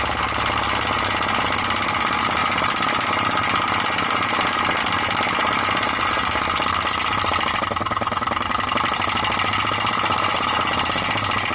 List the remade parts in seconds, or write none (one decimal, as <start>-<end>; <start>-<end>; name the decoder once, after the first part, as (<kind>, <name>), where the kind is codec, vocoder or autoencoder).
none